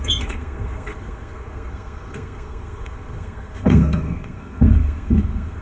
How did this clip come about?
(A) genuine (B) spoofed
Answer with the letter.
B